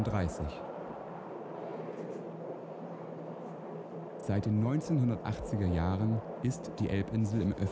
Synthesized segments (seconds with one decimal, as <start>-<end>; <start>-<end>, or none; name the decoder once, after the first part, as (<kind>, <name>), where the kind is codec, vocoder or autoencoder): 0.0-1.7 (vocoder, BigVGAN v2); 3.2-4.2